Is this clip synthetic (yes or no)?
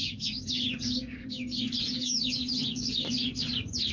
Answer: yes